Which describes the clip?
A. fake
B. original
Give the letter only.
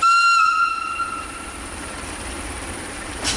A